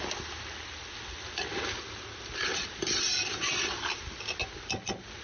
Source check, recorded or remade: recorded